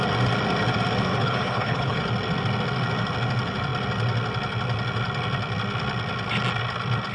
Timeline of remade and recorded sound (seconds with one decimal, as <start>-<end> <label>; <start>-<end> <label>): 0.0-1.1 recorded; 1.1-2.0 remade; 2.0-7.1 recorded